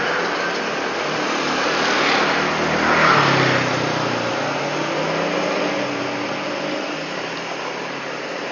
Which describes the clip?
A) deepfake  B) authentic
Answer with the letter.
B